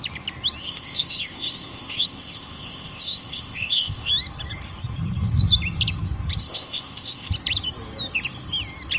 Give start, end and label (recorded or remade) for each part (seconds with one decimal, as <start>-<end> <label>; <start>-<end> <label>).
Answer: 0.0-0.6 recorded; 0.6-4.1 remade; 4.1-6.4 recorded; 6.4-7.3 remade; 7.3-9.0 recorded